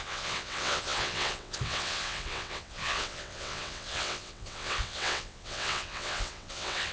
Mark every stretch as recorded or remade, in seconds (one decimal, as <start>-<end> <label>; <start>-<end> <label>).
0.0-6.9 remade